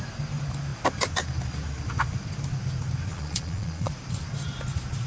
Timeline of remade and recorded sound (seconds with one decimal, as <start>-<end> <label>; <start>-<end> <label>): 0.0-3.1 recorded; 3.1-3.9 remade; 3.9-5.1 recorded